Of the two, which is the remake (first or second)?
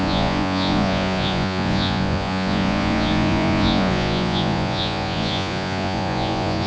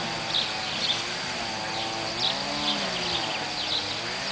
first